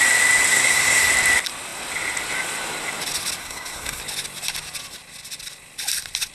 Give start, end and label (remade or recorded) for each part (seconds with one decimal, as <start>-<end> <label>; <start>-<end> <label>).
0.0-0.5 recorded; 0.5-1.1 remade; 1.1-3.4 recorded; 3.4-4.0 remade; 4.0-6.3 recorded